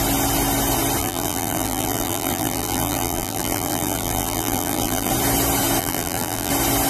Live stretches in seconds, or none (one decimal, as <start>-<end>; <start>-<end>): 0.0-1.0; 5.1-5.8; 6.5-6.9